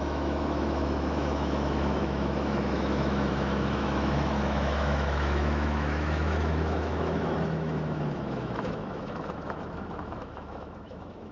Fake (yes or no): yes